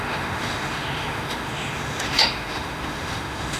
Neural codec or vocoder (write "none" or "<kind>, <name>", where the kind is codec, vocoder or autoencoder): autoencoder, DAC-VAE